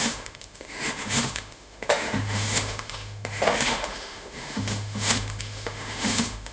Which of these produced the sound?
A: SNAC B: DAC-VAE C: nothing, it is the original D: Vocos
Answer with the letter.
B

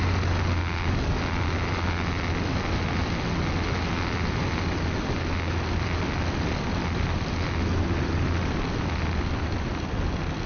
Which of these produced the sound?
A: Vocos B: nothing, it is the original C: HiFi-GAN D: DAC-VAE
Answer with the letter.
B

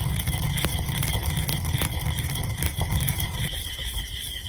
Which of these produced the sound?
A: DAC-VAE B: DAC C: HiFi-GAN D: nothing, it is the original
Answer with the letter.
D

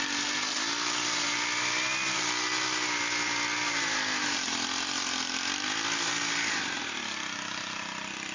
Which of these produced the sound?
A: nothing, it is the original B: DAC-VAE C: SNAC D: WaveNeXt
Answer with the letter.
A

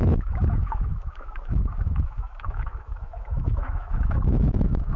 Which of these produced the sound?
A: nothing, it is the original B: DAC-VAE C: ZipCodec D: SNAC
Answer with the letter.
B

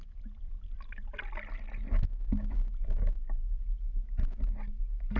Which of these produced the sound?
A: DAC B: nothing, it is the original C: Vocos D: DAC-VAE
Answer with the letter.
B